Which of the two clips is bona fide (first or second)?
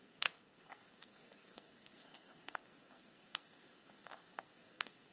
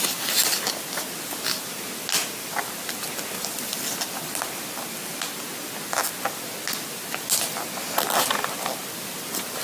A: second